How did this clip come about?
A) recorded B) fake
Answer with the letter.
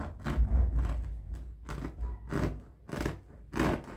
A